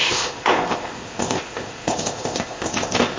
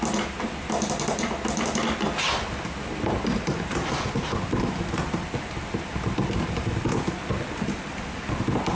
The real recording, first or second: second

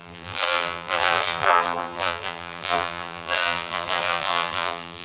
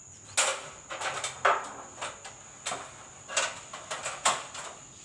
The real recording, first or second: second